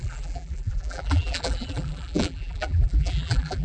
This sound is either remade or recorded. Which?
remade